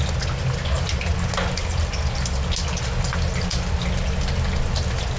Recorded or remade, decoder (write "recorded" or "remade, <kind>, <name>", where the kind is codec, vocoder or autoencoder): recorded